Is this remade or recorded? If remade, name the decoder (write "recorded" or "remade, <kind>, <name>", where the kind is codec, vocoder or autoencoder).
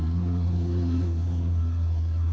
remade, codec, SNAC